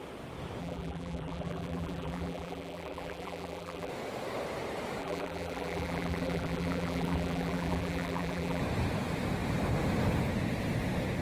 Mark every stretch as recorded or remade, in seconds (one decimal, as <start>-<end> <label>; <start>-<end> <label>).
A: 0.0-0.6 recorded; 0.6-3.9 remade; 3.9-5.0 recorded; 5.0-8.6 remade; 8.6-11.2 recorded